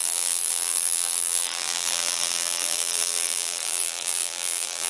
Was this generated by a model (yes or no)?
yes